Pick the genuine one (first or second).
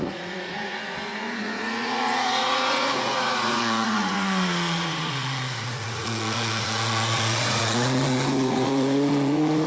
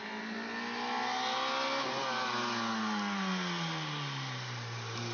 second